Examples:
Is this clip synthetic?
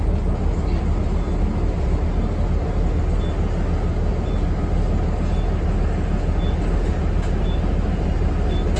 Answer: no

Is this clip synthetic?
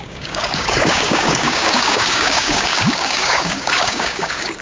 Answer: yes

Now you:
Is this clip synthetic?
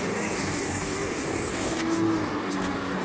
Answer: yes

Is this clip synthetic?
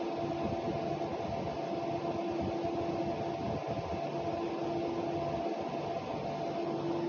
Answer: no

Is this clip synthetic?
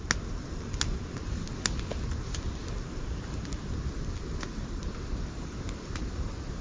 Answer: no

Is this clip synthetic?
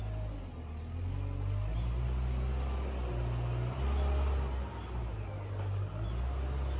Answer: no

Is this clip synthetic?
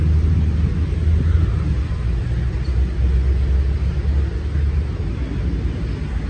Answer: no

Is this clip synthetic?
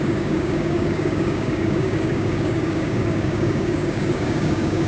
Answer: yes